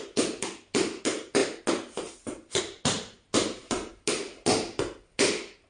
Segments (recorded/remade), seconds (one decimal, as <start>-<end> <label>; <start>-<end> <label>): 0.0-5.7 recorded